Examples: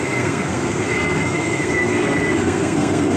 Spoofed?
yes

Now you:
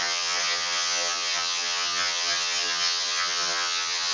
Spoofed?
yes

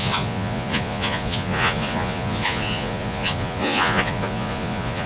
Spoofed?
yes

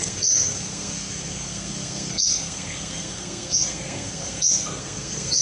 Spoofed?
yes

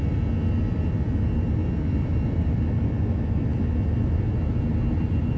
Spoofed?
yes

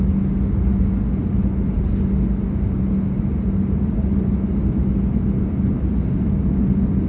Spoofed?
no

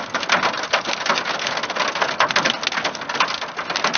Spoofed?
no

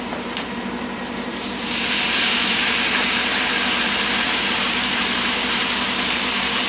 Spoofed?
yes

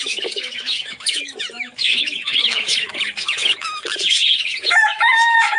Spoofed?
yes